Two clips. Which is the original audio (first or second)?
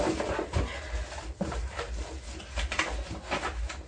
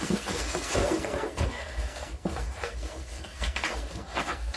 first